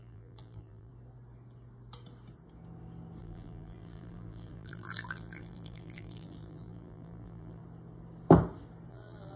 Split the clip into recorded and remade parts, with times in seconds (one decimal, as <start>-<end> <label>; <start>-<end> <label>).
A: 0.0-0.9 remade; 0.9-3.2 recorded; 3.2-7.6 remade; 7.6-8.9 recorded; 8.9-9.4 remade

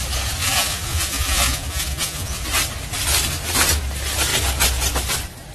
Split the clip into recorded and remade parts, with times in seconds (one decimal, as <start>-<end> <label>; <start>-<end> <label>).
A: 0.0-0.4 recorded; 0.4-2.4 remade; 2.4-5.5 recorded

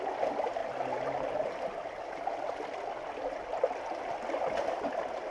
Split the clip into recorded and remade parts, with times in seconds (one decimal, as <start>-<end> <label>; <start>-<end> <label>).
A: 0.0-5.3 recorded

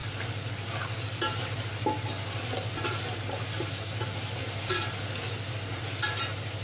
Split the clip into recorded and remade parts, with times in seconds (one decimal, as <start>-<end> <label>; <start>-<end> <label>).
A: 0.0-6.6 recorded

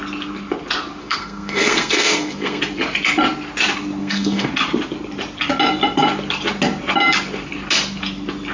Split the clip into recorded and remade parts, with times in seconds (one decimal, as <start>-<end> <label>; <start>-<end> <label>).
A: 0.0-1.0 recorded; 1.0-2.6 remade; 2.6-4.0 recorded; 4.0-4.5 remade; 4.5-8.5 recorded

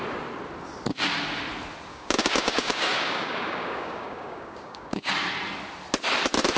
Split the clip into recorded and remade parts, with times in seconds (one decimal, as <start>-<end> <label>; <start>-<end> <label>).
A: 0.0-1.9 recorded; 1.9-5.1 remade; 5.1-6.6 recorded